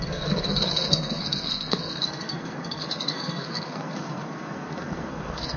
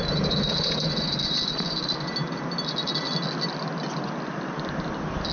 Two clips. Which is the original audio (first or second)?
second